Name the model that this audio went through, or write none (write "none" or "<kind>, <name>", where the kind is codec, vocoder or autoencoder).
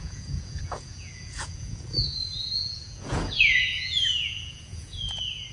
vocoder, Vocos